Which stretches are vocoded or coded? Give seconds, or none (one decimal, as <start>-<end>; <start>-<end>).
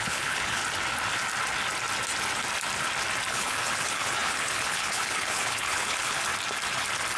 0.0-0.6; 3.3-6.3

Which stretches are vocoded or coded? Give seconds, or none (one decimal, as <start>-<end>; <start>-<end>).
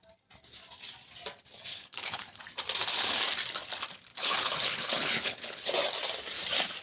1.7-2.4; 4.1-5.7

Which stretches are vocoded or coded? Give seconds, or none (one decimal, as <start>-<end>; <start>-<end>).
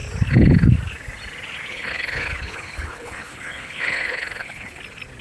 1.7-4.8